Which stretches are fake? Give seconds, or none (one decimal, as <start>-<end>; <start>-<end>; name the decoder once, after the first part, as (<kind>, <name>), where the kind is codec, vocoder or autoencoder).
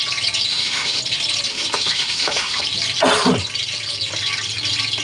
0.5-1.0 (autoencoder, DAC-VAE); 1.5-2.6